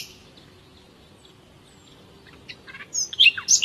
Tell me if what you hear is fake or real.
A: real